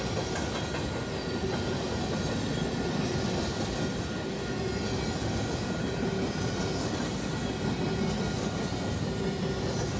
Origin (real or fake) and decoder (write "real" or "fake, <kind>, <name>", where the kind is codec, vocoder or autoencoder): real